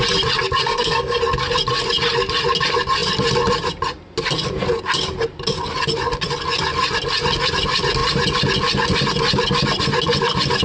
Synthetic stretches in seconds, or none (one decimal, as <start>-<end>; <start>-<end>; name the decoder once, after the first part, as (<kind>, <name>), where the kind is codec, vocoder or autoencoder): 0.6-1.2 (codec, SNAC)